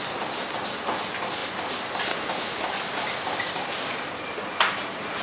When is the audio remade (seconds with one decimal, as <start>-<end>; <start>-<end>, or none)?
none